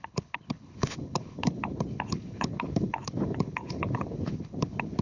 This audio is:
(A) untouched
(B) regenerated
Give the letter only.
B